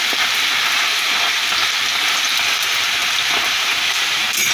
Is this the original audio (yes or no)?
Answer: yes